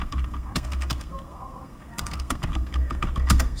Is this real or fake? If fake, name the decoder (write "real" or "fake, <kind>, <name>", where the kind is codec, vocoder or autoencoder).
fake, codec, SNAC